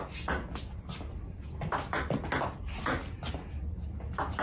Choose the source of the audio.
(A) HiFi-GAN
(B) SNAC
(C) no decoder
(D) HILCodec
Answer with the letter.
C